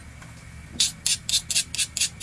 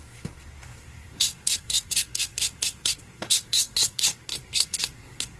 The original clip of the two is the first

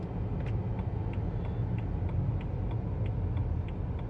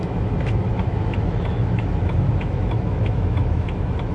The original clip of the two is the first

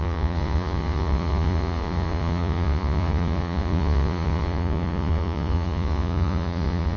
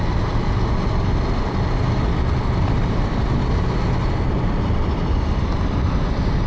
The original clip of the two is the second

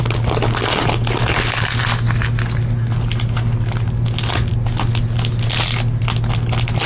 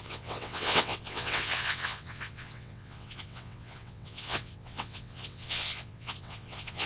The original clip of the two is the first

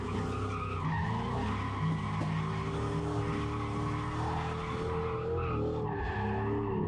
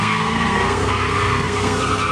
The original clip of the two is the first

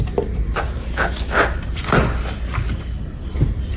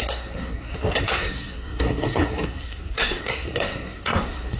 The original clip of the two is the first